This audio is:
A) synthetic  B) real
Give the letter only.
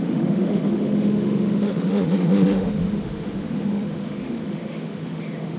A